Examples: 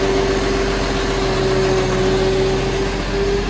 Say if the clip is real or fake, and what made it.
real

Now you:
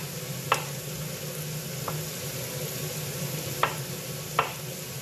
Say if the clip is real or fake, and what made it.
real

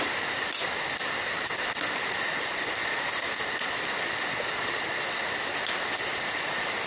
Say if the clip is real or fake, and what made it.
real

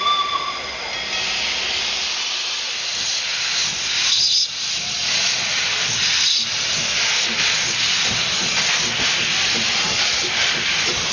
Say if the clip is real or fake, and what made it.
real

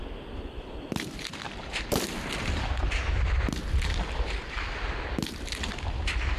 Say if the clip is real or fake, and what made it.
real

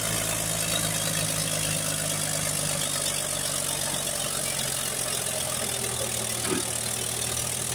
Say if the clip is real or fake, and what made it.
real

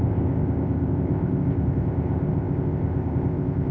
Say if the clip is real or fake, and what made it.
fake, codec, ZipCodec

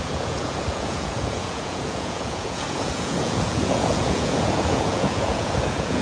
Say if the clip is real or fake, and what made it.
fake, vocoder, Vocos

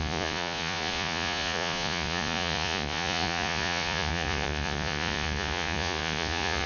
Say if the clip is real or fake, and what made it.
fake, vocoder, Vocos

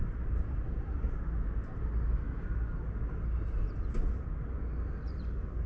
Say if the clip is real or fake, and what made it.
real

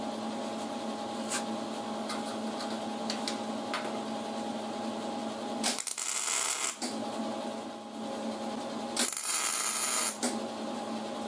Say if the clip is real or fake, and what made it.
real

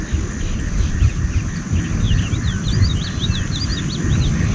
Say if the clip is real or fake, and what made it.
real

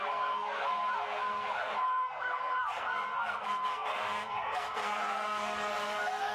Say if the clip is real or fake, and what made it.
fake, codec, SNAC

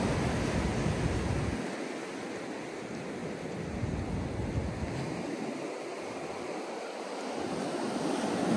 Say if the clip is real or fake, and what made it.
real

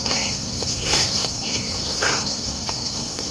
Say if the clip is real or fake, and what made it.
fake, codec, SNAC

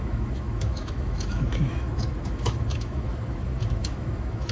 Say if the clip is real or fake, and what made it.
fake, autoencoder, DAC-VAE